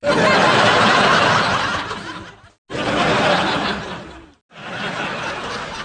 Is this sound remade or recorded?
recorded